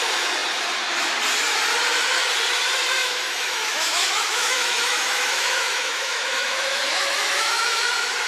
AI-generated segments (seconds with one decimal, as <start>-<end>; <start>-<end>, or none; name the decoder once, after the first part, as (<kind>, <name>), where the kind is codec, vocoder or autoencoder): 3.0-7.9 (autoencoder, DAC-VAE)